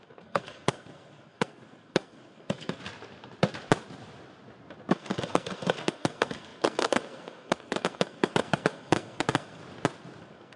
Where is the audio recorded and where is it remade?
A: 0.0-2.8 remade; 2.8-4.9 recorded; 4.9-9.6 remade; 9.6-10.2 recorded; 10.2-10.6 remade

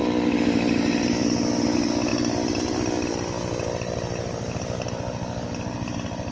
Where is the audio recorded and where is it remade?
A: 0.0-6.3 recorded